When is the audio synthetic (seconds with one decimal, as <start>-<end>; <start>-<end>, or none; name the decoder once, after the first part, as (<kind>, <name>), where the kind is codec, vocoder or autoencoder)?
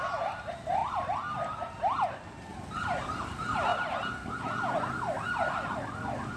0.8-1.7 (vocoder, BigVGAN v2); 2.5-3.1